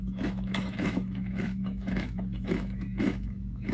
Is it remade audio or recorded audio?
remade